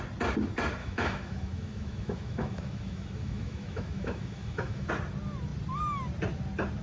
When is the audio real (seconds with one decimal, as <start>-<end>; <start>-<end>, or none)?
0.0-0.8; 4.9-6.8

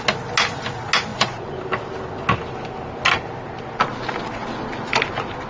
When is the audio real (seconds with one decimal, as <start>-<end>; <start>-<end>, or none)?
0.0-1.1; 1.6-5.5

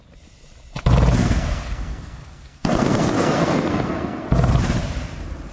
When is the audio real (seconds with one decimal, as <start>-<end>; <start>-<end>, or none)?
0.0-1.2; 4.5-5.5

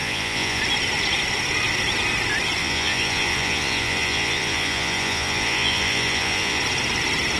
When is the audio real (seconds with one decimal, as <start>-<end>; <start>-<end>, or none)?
0.6-2.6; 6.6-7.4